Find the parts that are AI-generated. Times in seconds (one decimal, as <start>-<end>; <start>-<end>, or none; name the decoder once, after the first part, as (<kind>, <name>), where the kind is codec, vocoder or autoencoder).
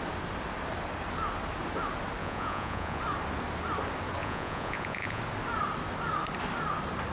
2.2-3.0 (vocoder, Vocos); 4.2-5.2